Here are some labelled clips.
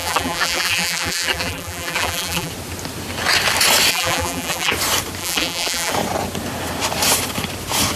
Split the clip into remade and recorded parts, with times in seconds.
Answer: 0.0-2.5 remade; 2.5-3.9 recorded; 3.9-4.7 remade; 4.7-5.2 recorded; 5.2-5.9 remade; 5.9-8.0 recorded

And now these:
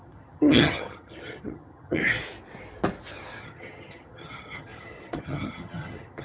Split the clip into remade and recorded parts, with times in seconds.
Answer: 0.0-2.0 remade; 2.0-3.4 recorded; 3.4-6.2 remade

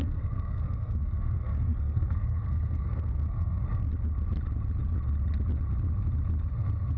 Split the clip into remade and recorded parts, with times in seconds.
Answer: 0.0-3.6 remade; 3.6-7.0 recorded

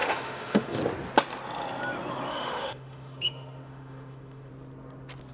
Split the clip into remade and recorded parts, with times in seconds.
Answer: 0.0-0.8 remade; 0.8-2.3 recorded; 2.3-4.5 remade; 4.5-5.3 recorded

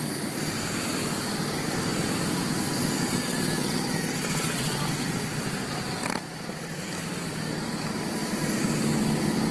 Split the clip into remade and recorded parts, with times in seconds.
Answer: 0.0-9.5 recorded